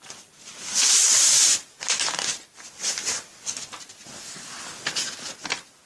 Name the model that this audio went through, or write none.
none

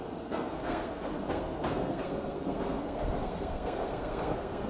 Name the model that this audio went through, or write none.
codec, SNAC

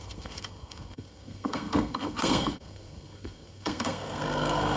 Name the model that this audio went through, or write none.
codec, SNAC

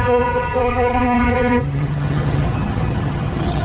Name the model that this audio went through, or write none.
vocoder, HiFi-GAN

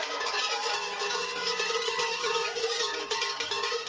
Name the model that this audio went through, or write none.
codec, DAC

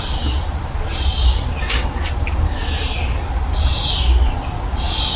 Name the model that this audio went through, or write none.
none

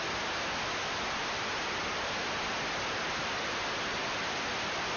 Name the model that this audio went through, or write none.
vocoder, BigVGAN v2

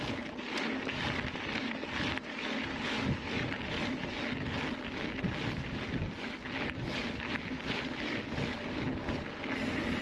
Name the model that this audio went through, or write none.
none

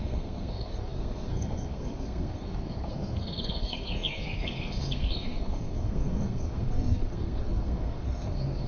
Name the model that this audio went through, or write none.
codec, SNAC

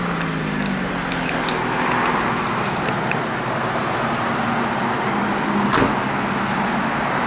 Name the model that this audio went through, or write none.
none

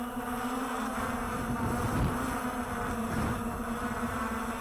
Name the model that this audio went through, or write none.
vocoder, BigVGAN v2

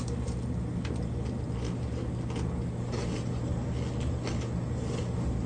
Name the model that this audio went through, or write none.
none